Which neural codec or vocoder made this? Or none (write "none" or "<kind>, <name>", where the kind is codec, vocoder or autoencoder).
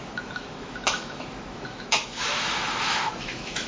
autoencoder, DAC-VAE